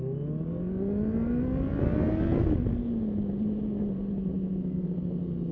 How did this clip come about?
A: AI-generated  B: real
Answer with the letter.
B